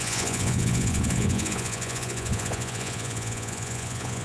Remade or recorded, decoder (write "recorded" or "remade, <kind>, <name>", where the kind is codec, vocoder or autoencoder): remade, vocoder, Vocos